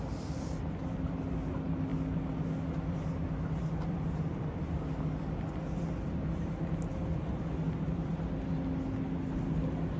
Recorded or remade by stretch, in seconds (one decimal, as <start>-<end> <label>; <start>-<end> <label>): 0.0-10.0 recorded

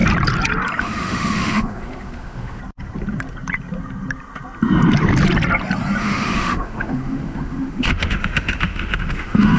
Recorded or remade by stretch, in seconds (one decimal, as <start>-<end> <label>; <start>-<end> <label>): 0.0-0.8 recorded; 0.8-2.6 remade; 2.6-6.0 recorded; 6.0-9.6 remade

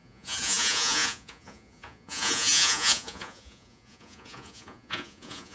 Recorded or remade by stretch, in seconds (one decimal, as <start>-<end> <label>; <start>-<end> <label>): 0.0-5.5 remade